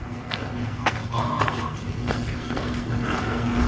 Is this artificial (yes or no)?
yes